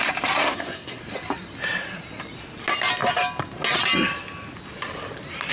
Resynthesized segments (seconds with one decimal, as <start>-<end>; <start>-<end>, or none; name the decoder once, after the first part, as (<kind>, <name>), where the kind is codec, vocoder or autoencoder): 0.4-1.0 (codec, SNAC)